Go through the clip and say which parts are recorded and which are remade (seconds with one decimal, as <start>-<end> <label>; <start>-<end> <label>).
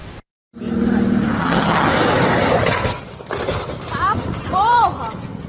0.0-1.4 recorded; 1.4-1.9 remade; 1.9-5.5 recorded